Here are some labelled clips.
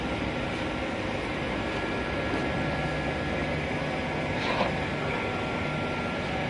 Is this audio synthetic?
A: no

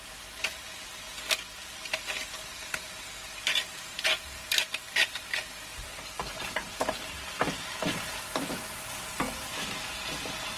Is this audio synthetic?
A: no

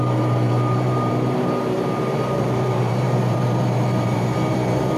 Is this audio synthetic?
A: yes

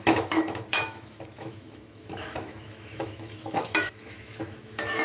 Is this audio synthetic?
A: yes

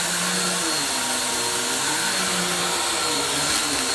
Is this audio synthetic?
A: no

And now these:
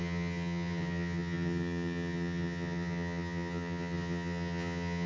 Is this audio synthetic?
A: yes